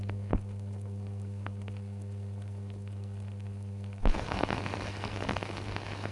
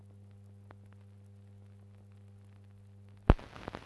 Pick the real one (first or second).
second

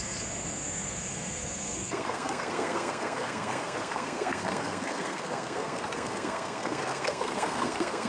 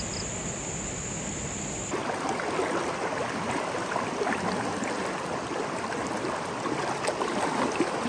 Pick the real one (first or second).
second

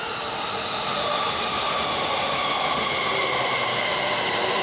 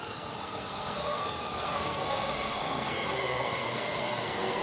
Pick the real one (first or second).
first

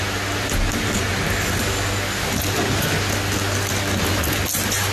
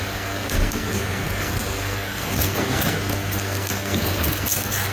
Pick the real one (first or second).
first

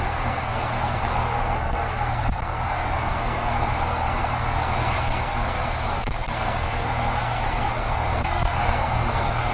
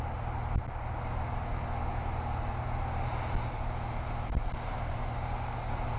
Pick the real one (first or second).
second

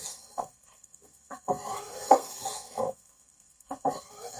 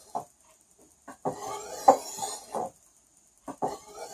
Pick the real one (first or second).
second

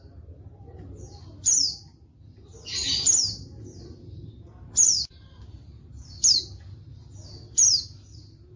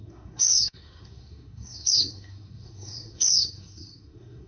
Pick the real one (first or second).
first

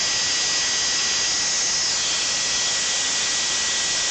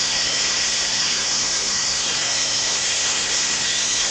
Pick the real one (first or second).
first